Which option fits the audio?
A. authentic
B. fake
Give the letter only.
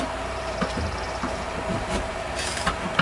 B